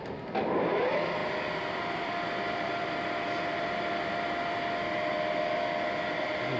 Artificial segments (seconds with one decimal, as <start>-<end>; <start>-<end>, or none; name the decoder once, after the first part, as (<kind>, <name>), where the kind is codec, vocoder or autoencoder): 1.2-4.1 (vocoder, BigVGAN v2)

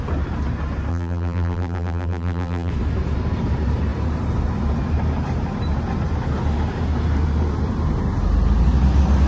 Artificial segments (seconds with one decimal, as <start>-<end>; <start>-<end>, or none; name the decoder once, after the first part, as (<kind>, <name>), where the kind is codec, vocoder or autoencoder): 0.9-2.7 (vocoder, BigVGAN v2)

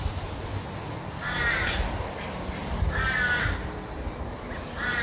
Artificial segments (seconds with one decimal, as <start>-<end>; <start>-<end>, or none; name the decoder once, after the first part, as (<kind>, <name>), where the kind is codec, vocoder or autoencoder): none

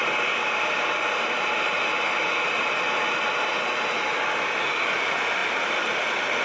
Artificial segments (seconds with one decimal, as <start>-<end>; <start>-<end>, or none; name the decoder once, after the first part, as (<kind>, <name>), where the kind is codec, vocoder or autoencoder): none

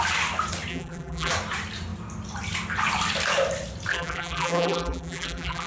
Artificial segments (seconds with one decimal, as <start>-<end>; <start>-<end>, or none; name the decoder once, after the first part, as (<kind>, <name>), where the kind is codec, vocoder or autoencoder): 0.7-1.3 (vocoder, BigVGAN v2); 3.9-5.7

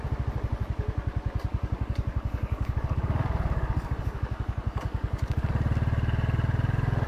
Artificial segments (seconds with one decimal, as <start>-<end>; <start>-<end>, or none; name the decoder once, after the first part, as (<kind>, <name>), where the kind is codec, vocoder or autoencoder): 1.5-5.5 (codec, DAC)